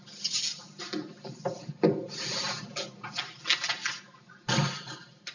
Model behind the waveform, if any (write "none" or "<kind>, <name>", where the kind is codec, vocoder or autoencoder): none